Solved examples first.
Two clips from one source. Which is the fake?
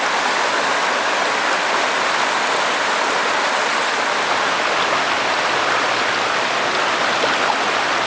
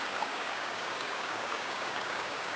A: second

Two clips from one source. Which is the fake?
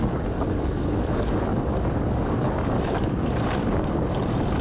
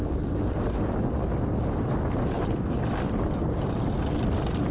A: first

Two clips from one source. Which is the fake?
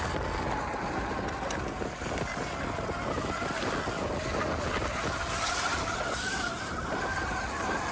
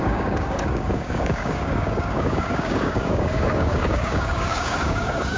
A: second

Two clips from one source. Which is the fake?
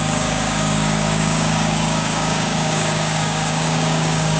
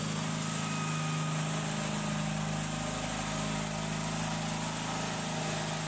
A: first